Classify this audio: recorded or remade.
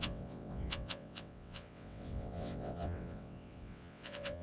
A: remade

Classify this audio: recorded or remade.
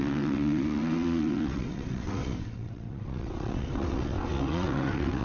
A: remade